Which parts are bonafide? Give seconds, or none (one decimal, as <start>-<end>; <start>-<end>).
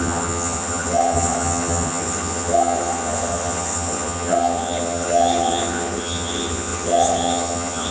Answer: none